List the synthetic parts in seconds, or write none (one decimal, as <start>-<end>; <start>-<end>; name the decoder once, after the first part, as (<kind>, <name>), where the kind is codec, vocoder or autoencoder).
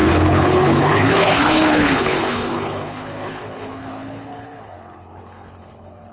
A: 0.0-6.1 (codec, HILCodec)